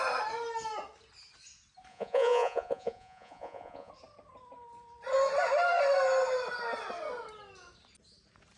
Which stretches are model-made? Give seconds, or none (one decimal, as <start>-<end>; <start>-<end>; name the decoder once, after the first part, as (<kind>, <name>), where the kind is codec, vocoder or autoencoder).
1.9-3.9 (vocoder, Vocos)

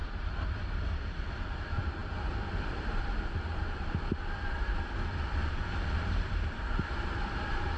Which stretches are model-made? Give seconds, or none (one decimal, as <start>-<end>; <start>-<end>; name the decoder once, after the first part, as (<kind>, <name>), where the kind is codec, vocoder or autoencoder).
0.0-1.6 (vocoder, BigVGAN v2); 2.0-6.6

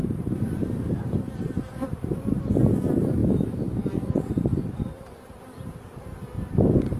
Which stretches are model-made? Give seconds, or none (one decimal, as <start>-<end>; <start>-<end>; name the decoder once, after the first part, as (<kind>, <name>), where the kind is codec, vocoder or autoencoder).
0.0-2.2 (vocoder, BigVGAN v2); 3.2-7.0

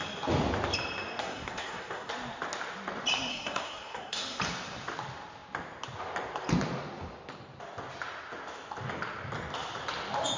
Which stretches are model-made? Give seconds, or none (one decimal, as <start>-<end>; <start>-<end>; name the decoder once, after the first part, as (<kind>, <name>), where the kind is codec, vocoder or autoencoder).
1.2-2.1 (codec, SNAC); 3.3-4.4